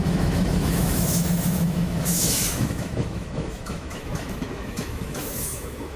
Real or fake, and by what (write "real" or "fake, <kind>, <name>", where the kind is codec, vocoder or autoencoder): fake, autoencoder, DAC-VAE